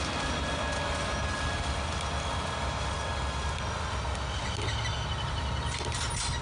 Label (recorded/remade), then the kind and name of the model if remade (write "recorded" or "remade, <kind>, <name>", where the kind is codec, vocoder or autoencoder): recorded